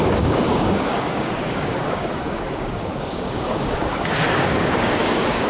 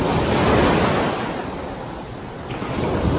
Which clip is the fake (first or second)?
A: first